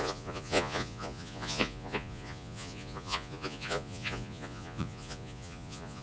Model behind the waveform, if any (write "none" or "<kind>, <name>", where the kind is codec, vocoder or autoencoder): vocoder, Vocos